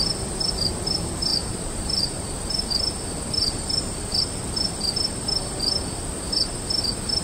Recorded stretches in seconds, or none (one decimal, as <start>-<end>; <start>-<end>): 0.0-1.3; 2.7-7.2